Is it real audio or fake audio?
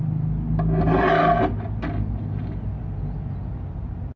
real